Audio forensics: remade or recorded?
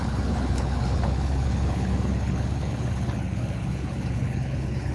remade